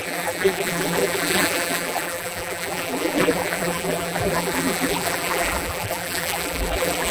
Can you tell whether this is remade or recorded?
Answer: remade